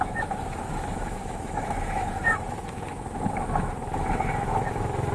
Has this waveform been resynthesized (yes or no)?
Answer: yes